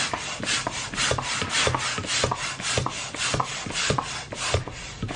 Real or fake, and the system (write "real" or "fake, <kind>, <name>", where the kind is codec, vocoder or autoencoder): real